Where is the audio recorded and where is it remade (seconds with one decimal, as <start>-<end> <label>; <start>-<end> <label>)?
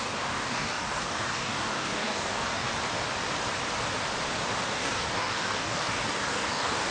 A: 0.0-2.7 remade; 2.7-4.7 recorded; 4.7-6.9 remade